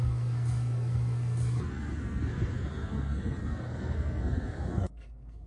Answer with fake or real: fake